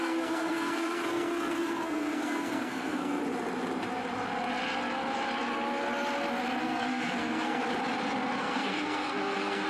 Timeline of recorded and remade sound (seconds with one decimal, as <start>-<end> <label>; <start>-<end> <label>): 0.0-3.2 remade; 3.2-6.6 recorded; 6.6-7.6 remade; 7.6-8.4 recorded; 8.4-9.7 remade